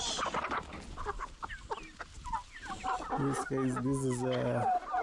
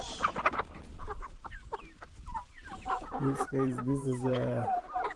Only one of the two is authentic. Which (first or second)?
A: first